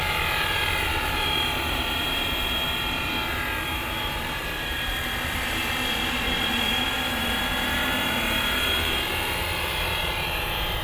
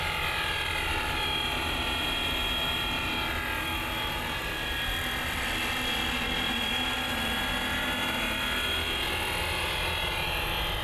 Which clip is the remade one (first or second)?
first